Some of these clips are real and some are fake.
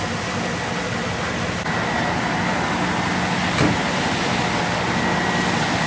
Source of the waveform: real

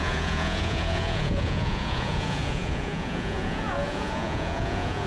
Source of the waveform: fake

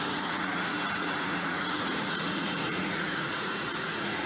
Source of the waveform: fake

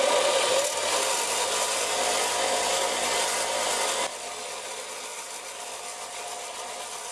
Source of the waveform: real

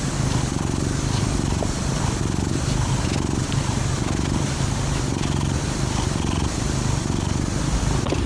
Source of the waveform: real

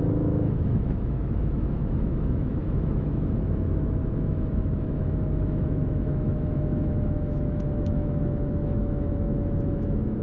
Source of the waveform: fake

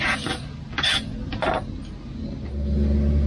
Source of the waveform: real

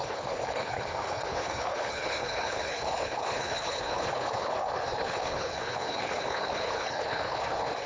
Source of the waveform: fake